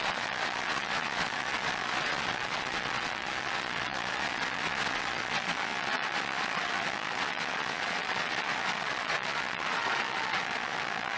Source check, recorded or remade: remade